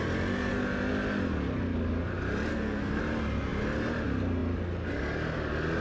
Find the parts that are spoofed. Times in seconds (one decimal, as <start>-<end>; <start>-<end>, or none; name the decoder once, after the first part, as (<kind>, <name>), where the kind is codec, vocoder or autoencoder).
2.5-3.0 (codec, SNAC)